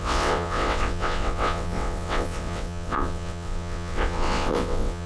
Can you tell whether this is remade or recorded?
remade